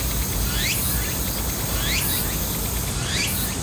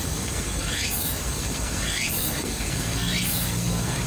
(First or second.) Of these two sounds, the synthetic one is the second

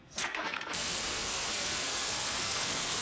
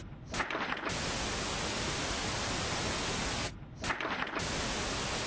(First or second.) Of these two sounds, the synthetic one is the first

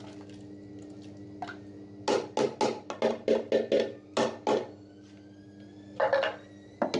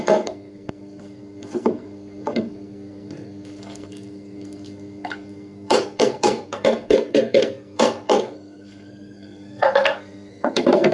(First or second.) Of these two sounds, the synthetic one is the second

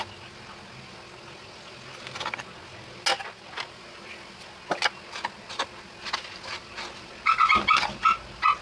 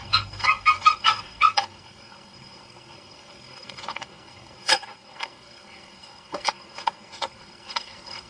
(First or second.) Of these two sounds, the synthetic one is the second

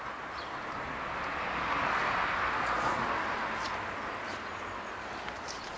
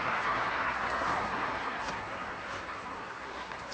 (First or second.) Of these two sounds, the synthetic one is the second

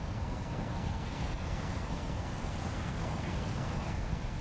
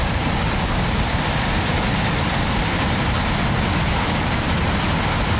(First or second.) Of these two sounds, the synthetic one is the first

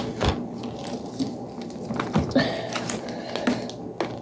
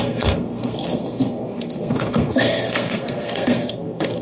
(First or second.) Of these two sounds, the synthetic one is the second